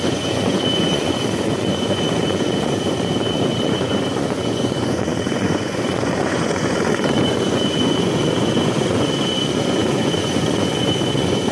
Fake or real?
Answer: fake